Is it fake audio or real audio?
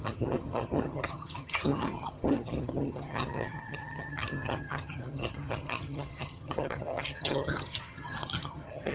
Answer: fake